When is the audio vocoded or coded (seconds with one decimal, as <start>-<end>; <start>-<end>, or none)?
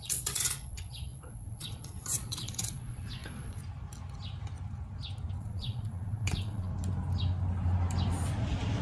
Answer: 0.0-3.6; 5.4-6.7